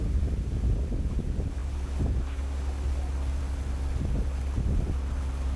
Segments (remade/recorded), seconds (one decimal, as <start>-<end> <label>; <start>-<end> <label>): 0.0-5.6 recorded